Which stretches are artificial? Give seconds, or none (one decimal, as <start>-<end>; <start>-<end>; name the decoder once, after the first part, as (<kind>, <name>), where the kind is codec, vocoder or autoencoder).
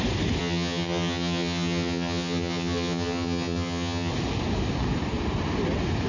0.4-4.1 (vocoder, HiFi-GAN)